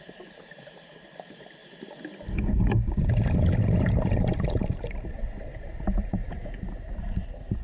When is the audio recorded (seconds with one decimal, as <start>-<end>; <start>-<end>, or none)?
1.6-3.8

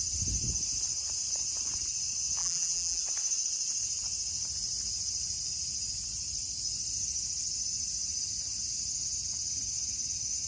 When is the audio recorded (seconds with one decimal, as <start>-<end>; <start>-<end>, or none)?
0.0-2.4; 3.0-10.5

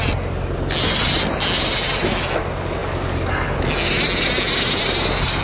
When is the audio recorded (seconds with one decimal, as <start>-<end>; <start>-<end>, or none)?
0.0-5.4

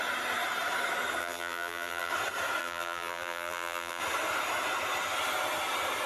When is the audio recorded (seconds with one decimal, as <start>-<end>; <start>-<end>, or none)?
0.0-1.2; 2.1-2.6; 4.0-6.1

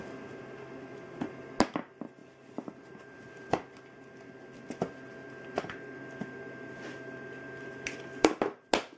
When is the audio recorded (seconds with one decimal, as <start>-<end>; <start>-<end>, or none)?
0.0-9.0

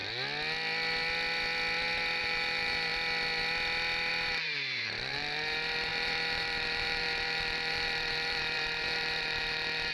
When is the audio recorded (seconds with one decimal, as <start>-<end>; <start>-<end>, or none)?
0.0-2.2; 2.9-4.1

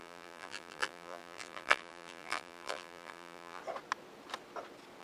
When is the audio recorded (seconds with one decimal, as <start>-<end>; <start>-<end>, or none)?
3.6-5.0

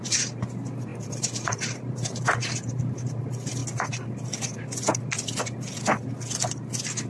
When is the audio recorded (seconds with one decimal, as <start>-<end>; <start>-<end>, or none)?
3.6-7.1